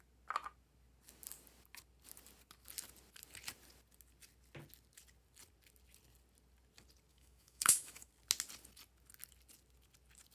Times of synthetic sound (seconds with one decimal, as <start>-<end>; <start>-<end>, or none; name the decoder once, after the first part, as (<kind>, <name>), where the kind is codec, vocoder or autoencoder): 7.1-8.1 (autoencoder, DAC-VAE)